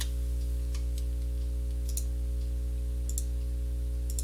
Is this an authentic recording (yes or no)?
yes